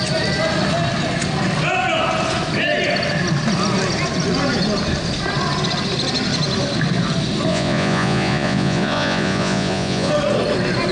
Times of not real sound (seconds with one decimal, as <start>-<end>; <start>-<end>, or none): 7.5-10.1